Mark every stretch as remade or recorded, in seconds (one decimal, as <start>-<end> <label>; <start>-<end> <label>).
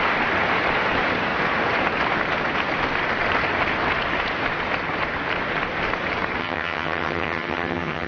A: 0.0-6.4 recorded; 6.4-8.1 remade